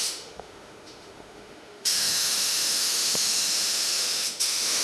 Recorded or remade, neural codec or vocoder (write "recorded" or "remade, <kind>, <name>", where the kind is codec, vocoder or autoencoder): remade, autoencoder, DAC-VAE